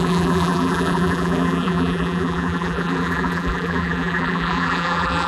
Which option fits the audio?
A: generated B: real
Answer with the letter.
A